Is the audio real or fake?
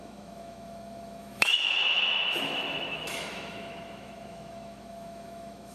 fake